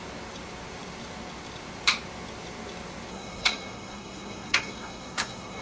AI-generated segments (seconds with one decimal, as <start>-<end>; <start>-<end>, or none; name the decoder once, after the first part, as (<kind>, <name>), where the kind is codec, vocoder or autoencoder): 3.1-5.6 (codec, SNAC)